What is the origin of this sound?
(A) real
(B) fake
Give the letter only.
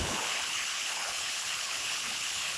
B